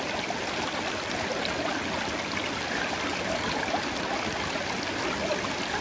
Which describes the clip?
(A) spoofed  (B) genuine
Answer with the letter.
B